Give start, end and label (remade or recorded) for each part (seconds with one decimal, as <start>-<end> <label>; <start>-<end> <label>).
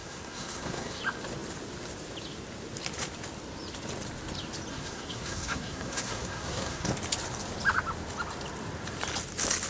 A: 0.0-1.0 remade; 1.0-4.7 recorded; 4.7-6.9 remade; 6.9-9.7 recorded